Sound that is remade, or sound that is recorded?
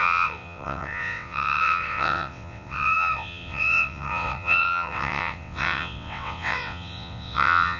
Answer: remade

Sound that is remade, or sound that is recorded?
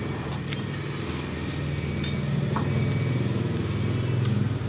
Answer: recorded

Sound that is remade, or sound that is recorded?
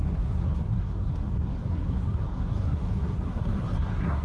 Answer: remade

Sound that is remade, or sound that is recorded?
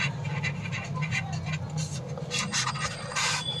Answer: recorded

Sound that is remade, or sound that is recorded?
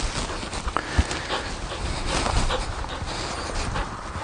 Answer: recorded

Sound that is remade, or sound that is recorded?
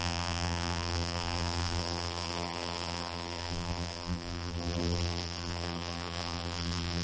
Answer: remade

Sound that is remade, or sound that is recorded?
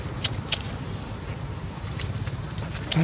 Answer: recorded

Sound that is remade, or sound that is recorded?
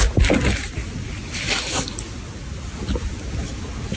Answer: recorded